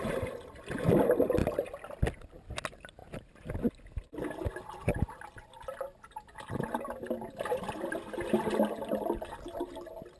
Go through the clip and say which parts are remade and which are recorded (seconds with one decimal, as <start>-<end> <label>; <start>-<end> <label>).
0.0-1.4 recorded; 1.4-2.1 remade; 2.1-10.2 recorded